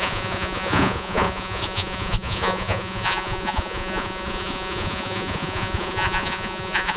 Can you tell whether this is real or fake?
fake